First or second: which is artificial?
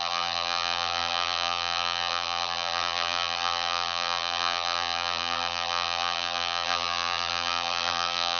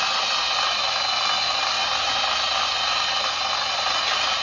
first